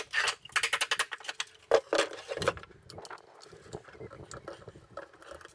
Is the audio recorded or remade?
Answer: recorded